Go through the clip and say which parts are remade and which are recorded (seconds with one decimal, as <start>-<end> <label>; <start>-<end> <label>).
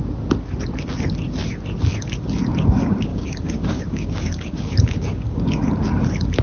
0.0-3.1 recorded; 3.1-5.6 remade; 5.6-6.4 recorded